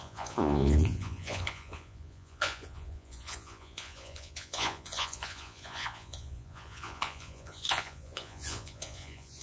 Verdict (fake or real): fake